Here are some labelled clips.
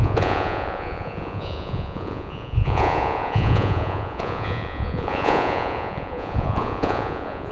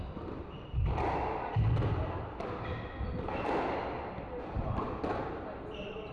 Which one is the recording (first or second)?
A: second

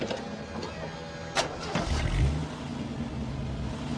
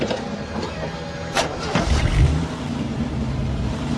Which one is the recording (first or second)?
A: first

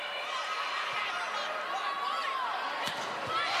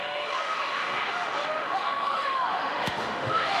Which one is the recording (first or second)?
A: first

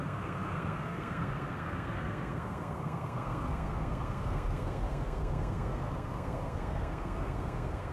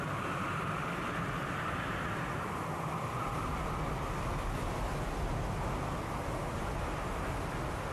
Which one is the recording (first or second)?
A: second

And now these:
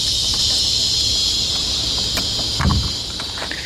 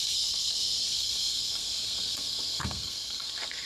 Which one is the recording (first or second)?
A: first